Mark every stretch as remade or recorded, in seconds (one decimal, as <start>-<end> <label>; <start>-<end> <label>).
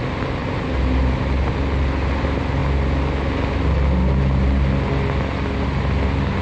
0.0-6.4 recorded